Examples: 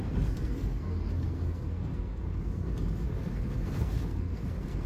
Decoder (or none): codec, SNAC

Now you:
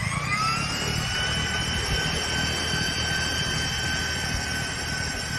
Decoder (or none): none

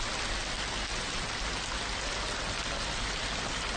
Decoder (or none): none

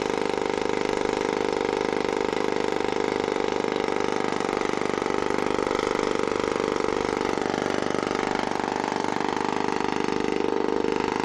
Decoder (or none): none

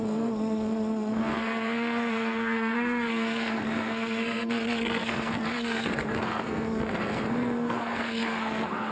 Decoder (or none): codec, SNAC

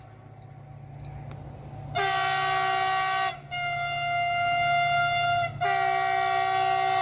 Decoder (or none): none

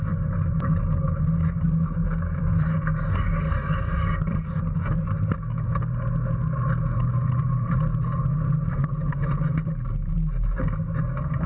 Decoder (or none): none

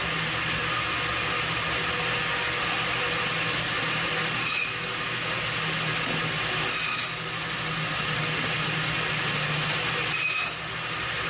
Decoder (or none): none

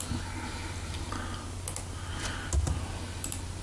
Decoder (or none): none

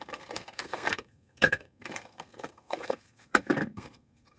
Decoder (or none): codec, SNAC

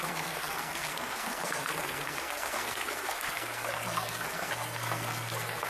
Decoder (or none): codec, SNAC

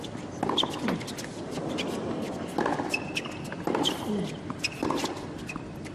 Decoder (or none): none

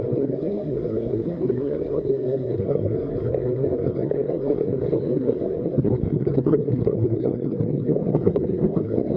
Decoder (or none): codec, SNAC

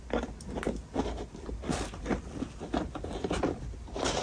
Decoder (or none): none